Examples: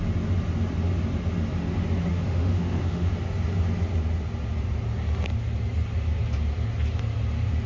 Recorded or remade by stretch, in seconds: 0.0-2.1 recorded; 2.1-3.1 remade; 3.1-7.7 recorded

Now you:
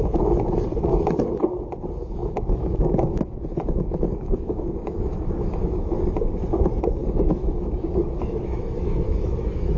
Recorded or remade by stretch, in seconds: 0.0-2.0 recorded; 2.0-6.0 remade; 6.0-7.0 recorded; 7.0-9.8 remade

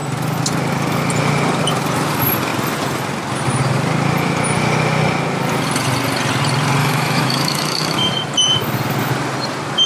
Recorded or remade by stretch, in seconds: 0.0-6.8 recorded; 6.8-8.1 remade; 8.1-9.9 recorded

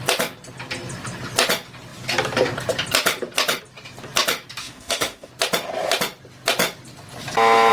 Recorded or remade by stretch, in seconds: 0.0-4.6 recorded; 4.6-5.3 remade; 5.3-7.7 recorded

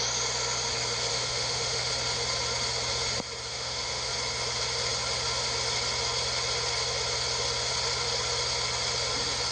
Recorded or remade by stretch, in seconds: 0.0-1.1 recorded; 1.1-1.9 remade; 1.9-3.5 recorded; 3.5-4.1 remade; 4.1-9.5 recorded

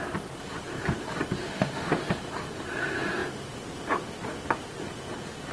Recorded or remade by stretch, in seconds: 0.0-1.4 recorded; 1.4-2.1 remade; 2.1-5.5 recorded